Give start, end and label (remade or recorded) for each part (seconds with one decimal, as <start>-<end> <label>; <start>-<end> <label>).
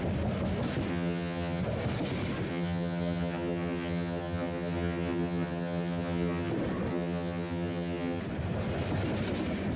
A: 0.0-0.9 recorded; 0.9-1.6 remade; 1.6-2.5 recorded; 2.5-6.5 remade; 6.5-6.9 recorded; 6.9-8.2 remade; 8.2-9.8 recorded